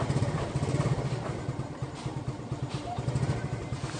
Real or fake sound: fake